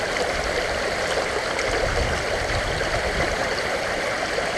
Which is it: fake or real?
fake